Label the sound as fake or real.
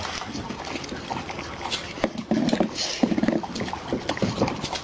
real